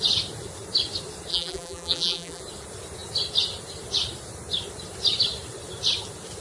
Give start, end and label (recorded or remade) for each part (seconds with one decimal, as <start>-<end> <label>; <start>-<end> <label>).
0.0-1.3 recorded; 1.3-2.4 remade; 2.4-6.4 recorded